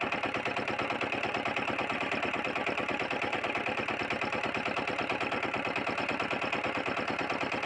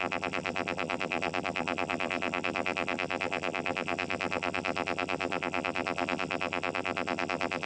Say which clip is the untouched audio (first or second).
first